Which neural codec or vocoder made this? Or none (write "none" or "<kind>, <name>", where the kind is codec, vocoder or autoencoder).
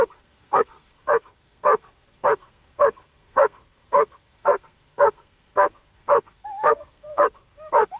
codec, SNAC